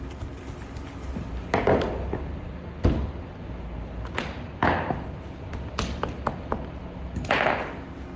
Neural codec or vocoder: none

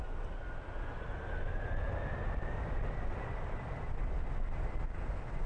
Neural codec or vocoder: none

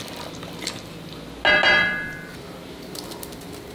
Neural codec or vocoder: none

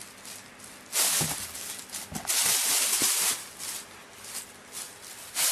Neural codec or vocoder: none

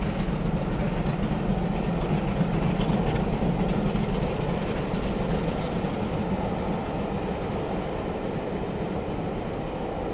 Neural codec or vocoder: none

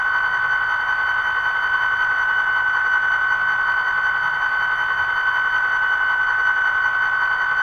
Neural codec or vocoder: none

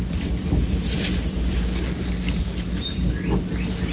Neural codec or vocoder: vocoder, BigVGAN v2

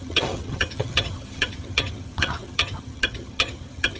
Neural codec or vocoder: vocoder, HiFi-GAN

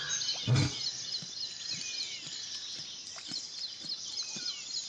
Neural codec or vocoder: none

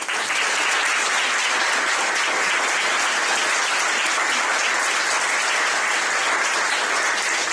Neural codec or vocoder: none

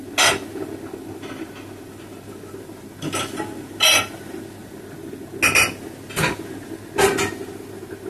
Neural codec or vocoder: none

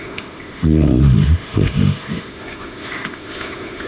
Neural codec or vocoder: autoencoder, DAC-VAE